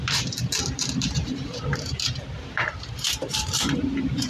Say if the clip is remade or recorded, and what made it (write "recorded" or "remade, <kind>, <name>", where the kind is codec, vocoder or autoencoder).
remade, vocoder, BigVGAN v2